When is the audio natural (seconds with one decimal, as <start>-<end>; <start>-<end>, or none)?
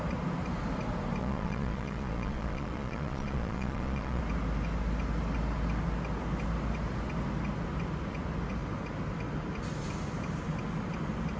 0.0-1.2; 4.2-11.4